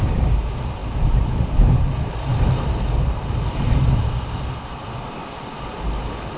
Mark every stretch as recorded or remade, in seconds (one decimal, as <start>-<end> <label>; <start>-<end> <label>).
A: 0.0-6.4 recorded